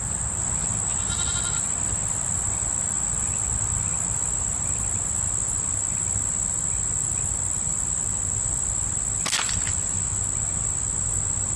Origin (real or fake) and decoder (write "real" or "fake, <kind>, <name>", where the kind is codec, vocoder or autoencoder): real